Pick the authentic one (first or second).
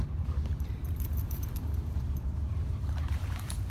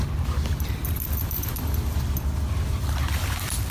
second